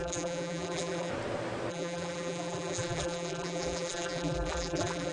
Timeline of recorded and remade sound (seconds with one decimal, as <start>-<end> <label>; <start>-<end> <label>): 0.0-1.1 remade; 1.1-1.7 recorded; 1.7-5.1 remade